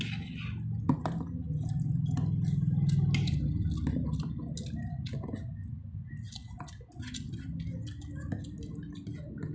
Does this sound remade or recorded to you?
recorded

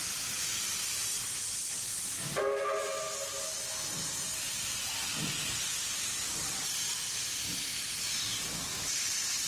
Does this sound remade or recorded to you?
recorded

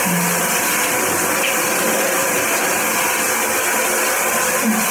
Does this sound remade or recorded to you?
recorded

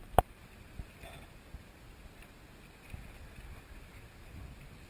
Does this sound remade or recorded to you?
recorded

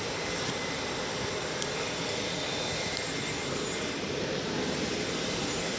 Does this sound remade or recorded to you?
remade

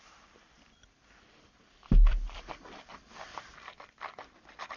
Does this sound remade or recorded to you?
remade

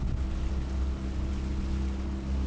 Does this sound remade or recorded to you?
recorded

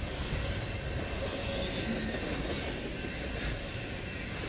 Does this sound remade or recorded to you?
recorded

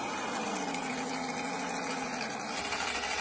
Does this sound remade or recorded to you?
recorded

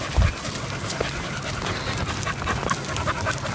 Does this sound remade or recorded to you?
recorded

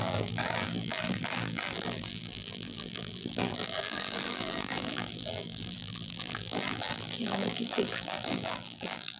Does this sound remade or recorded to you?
remade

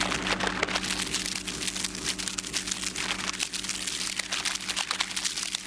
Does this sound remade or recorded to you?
recorded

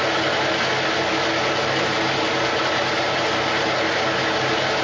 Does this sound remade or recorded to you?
recorded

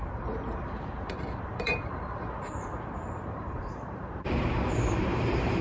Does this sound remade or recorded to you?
remade